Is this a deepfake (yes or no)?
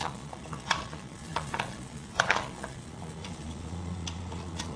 yes